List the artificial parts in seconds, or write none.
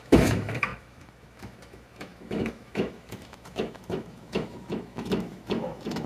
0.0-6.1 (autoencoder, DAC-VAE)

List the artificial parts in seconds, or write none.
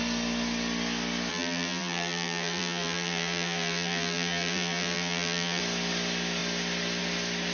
1.3-5.6 (vocoder, BigVGAN v2)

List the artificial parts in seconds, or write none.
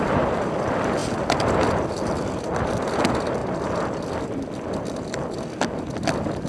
none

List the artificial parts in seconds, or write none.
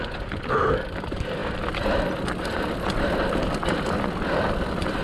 none